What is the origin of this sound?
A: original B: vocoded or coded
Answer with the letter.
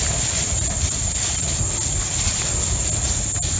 A